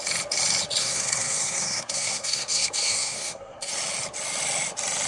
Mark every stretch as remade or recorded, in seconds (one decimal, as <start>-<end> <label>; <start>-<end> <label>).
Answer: 0.0-0.8 recorded; 0.8-3.7 remade; 3.7-5.1 recorded